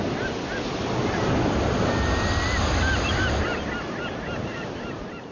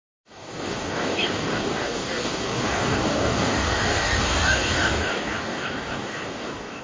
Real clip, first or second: first